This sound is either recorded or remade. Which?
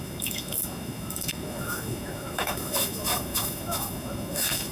remade